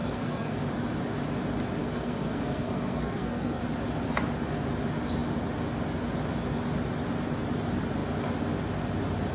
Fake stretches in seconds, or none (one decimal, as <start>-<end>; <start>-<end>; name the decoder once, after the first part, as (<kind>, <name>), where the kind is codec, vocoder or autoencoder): 0.0-0.6 (codec, SNAC); 1.8-3.6